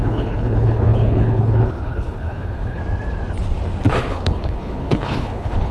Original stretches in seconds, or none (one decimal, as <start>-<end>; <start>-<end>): 2.8-4.0